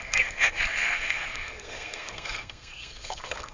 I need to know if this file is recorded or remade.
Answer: remade